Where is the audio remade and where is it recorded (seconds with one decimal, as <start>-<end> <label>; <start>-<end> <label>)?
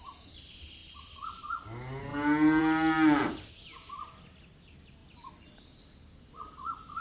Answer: 0.0-7.0 recorded